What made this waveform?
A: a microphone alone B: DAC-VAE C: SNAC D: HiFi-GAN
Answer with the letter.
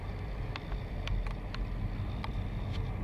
A